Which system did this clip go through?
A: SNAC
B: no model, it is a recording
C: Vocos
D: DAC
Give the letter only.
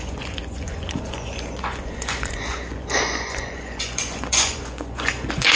C